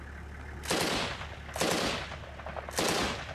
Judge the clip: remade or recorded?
recorded